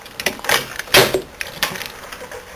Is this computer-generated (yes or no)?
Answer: no